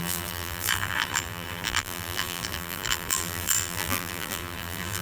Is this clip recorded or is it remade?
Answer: remade